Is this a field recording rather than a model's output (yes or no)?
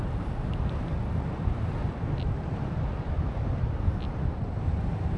yes